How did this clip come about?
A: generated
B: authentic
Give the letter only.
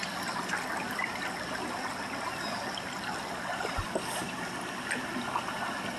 B